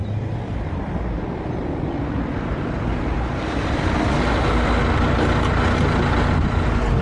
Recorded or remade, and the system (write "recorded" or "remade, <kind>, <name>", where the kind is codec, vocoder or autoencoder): recorded